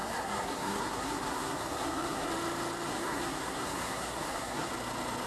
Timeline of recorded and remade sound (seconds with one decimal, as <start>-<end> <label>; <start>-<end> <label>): 0.0-2.3 remade; 2.3-2.9 recorded; 2.9-4.7 remade; 4.7-5.3 recorded